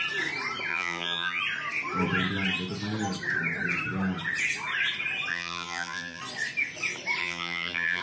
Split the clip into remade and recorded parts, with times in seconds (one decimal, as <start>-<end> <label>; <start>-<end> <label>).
0.0-0.7 recorded; 0.7-1.4 remade; 1.4-5.3 recorded; 5.3-6.2 remade; 6.2-7.2 recorded; 7.2-8.0 remade